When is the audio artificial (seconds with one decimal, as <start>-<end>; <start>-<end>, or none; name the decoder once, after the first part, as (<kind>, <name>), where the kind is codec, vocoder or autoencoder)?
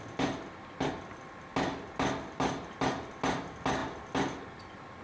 none